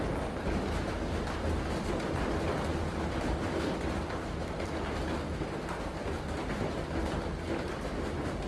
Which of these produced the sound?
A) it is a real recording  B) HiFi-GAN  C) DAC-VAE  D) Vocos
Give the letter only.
A